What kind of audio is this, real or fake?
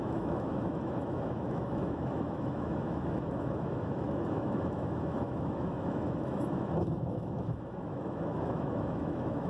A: fake